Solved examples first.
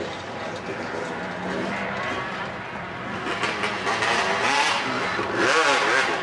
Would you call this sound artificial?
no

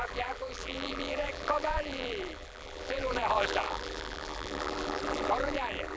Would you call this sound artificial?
yes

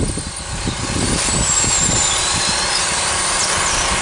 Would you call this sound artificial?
no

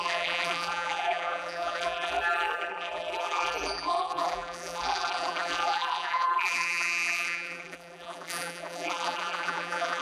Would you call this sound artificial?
yes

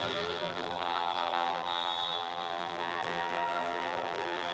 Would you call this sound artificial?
yes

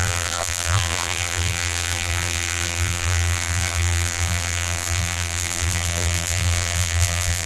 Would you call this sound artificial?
yes